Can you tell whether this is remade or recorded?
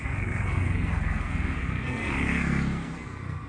remade